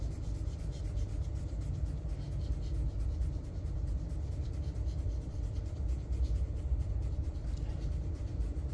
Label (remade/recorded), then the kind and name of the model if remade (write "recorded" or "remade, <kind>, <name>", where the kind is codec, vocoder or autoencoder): remade, vocoder, BigVGAN v2